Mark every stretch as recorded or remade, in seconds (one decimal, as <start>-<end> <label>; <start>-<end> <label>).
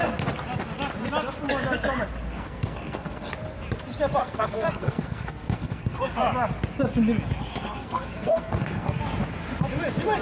0.0-2.3 recorded; 2.3-3.3 remade; 3.3-4.2 recorded; 4.2-6.2 remade; 6.2-7.5 recorded; 7.5-9.0 remade; 9.0-10.2 recorded